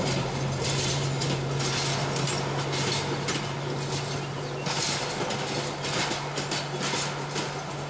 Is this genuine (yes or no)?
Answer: yes